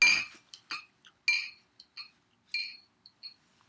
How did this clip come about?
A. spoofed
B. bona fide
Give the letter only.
B